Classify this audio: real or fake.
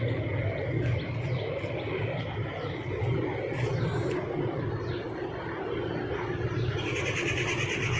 real